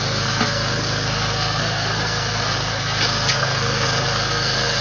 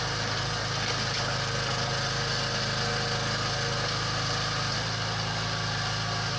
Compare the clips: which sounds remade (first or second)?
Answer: first